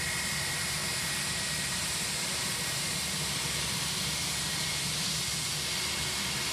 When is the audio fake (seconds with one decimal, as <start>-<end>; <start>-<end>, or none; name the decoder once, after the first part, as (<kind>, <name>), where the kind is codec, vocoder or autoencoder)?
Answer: 0.8-4.5 (vocoder, BigVGAN v2)